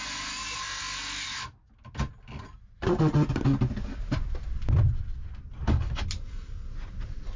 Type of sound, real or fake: real